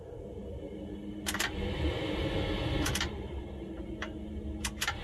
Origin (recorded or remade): recorded